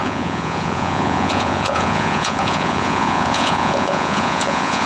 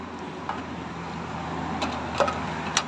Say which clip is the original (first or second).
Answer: second